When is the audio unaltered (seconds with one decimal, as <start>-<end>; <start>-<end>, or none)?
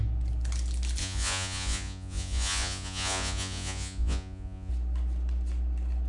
0.0-1.0; 4.7-6.1